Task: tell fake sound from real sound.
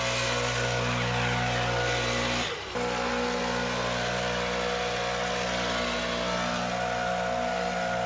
real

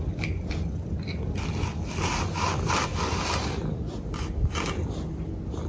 real